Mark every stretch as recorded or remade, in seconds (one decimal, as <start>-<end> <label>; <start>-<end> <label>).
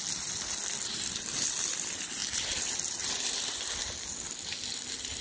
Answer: 0.0-5.2 recorded